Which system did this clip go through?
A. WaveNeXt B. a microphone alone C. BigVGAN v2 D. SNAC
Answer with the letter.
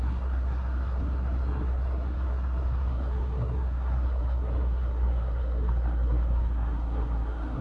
D